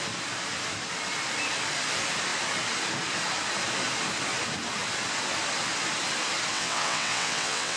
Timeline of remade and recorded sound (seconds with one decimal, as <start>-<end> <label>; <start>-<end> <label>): 0.0-6.5 recorded; 6.5-7.8 remade